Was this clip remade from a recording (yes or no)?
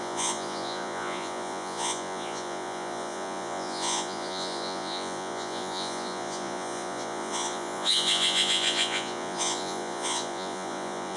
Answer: yes